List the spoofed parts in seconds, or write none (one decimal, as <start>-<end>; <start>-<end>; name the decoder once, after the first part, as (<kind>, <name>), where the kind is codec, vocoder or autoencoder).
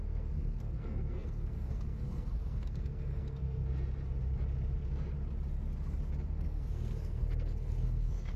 0.0-3.6 (codec, SNAC); 6.4-8.4